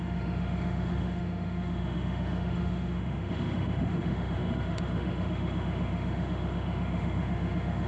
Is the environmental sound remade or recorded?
remade